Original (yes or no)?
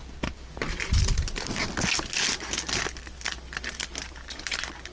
yes